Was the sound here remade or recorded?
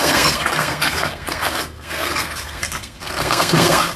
remade